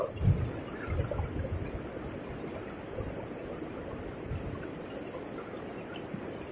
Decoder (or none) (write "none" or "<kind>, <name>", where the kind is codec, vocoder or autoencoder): none